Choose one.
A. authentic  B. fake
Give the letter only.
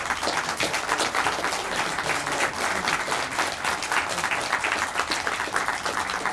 A